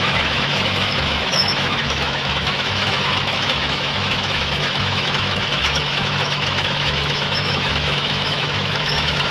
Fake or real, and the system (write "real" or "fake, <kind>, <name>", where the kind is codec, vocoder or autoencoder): fake, autoencoder, DAC-VAE